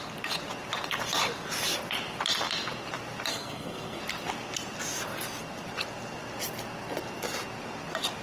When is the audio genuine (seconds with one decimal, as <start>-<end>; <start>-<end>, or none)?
0.0-3.3; 4.0-8.2